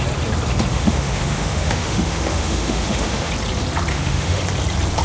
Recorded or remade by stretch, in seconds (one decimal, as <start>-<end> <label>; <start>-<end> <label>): 0.0-0.7 recorded; 0.7-3.3 remade; 3.3-3.9 recorded; 3.9-4.4 remade; 4.4-5.0 recorded